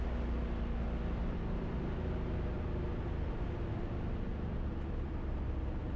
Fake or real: real